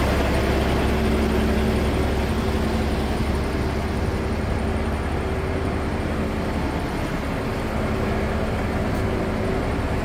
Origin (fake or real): real